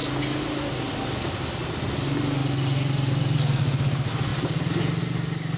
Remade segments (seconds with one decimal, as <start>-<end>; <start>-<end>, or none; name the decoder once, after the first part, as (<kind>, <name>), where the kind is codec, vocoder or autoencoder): none